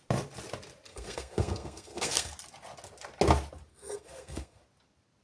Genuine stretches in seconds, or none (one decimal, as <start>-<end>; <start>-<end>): 0.0-0.9; 2.3-3.7; 4.6-5.2

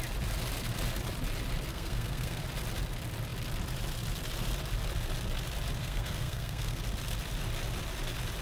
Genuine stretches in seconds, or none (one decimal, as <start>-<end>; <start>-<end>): 0.0-1.7; 2.4-5.8; 6.8-8.4

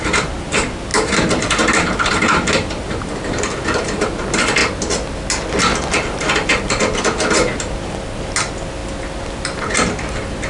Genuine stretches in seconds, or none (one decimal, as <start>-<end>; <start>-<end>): 0.0-10.5

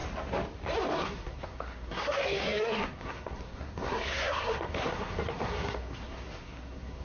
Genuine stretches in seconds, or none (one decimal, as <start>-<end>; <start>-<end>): 0.0-0.9